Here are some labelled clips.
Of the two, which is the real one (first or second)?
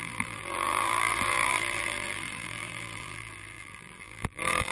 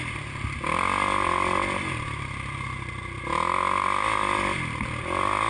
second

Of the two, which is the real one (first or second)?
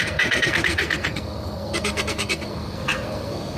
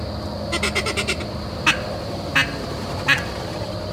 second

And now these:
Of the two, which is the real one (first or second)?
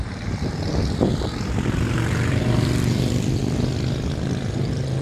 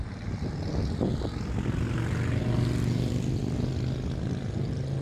second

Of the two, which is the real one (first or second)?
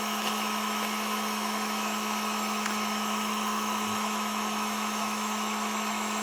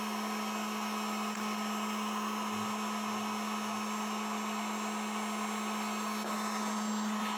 second